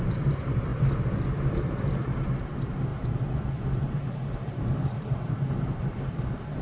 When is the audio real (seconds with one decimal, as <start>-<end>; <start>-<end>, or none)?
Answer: 0.7-1.6; 2.9-3.7